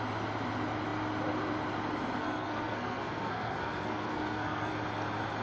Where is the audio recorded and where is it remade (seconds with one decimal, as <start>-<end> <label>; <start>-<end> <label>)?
0.0-2.2 recorded; 2.2-4.7 remade; 4.7-5.4 recorded